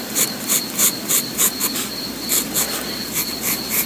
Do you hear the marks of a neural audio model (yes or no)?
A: no